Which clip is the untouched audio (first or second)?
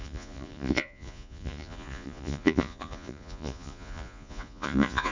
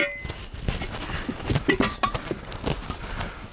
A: second